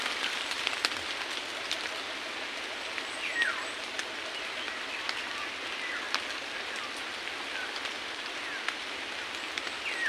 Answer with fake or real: real